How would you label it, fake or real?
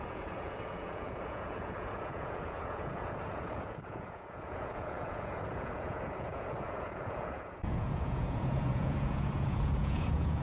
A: fake